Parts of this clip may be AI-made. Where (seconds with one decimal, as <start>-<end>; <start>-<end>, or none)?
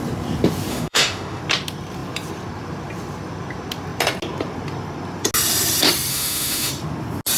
0.7-1.4; 6.1-6.7